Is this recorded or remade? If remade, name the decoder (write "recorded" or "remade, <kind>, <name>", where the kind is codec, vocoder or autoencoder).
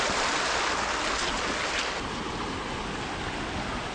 recorded